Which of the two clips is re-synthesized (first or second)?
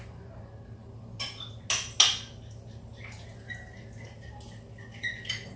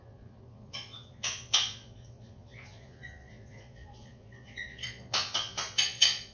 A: second